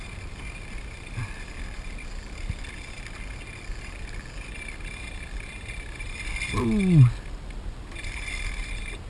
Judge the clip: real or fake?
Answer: real